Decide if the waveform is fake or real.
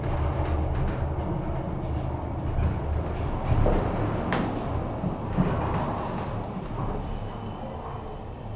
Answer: real